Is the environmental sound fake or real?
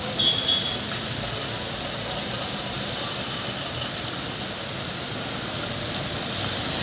real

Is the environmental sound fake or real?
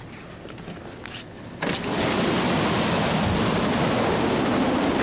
real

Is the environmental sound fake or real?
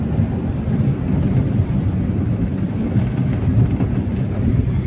real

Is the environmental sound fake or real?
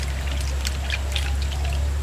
real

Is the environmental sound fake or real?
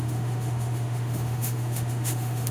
fake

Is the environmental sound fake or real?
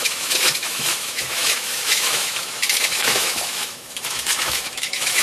fake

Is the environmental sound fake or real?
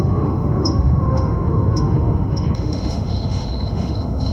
fake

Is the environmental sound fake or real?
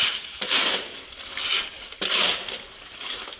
real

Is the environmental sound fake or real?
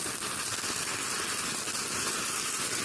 real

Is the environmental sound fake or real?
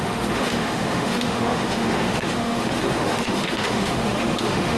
fake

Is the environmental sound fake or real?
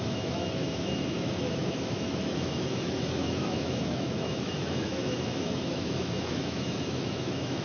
fake